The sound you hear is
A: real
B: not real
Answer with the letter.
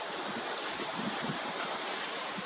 B